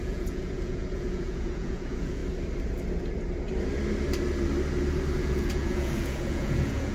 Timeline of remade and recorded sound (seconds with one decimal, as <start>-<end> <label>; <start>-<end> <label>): 0.0-2.2 remade; 2.2-5.2 recorded; 5.2-6.9 remade